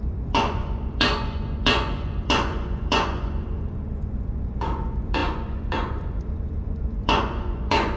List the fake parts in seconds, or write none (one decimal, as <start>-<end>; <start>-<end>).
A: 0.0-8.0